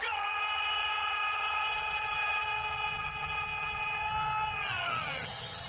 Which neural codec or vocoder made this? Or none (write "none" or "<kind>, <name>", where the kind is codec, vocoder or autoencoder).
vocoder, HiFi-GAN